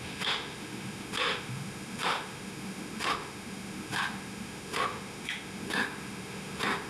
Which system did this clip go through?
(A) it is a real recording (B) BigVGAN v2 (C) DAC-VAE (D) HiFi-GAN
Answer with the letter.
C